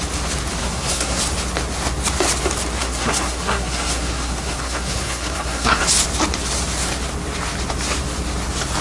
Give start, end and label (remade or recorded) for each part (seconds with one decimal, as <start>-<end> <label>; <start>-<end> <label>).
0.0-0.6 recorded; 0.6-1.2 remade; 1.2-2.8 recorded; 2.8-5.8 remade; 5.8-8.8 recorded